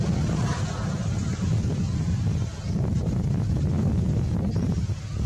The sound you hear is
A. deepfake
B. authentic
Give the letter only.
B